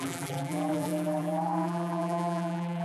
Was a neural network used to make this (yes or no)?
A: yes